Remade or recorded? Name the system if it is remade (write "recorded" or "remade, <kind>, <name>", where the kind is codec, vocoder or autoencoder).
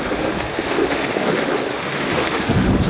remade, autoencoder, DAC-VAE